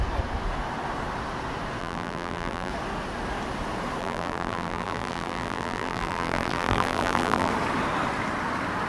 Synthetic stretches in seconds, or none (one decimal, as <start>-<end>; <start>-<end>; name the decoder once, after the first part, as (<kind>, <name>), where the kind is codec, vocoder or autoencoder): 1.8-2.7 (vocoder, BigVGAN v2); 4.0-7.5